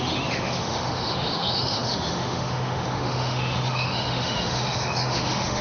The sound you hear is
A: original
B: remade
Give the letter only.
B